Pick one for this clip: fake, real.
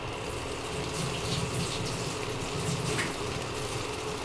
real